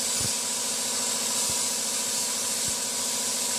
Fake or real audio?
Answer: real